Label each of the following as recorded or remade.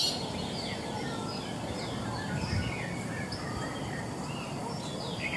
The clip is recorded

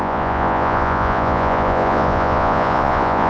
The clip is remade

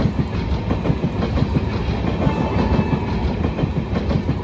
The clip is recorded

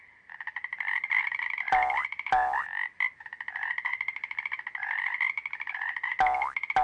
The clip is recorded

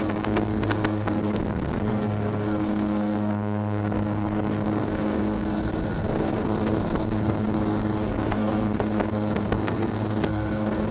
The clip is remade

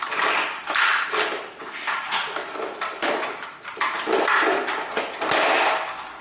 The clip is recorded